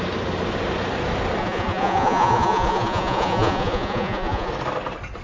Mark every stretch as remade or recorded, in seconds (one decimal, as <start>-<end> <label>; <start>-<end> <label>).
0.0-1.4 recorded; 1.4-4.5 remade; 4.5-5.2 recorded